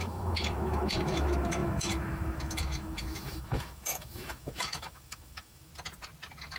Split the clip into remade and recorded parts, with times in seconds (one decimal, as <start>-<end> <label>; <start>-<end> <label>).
0.0-5.7 remade; 5.7-6.6 recorded